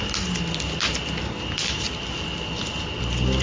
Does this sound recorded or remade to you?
recorded